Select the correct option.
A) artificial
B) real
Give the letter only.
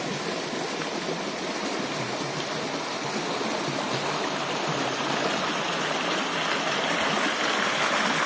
B